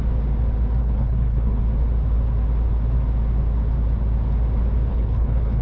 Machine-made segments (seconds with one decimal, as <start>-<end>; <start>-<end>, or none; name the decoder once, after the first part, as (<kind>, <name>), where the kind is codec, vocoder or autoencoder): 0.8-1.6 (codec, HILCodec); 4.9-5.6